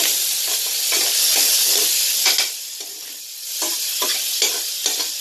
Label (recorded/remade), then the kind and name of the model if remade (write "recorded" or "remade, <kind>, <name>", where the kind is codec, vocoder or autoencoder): recorded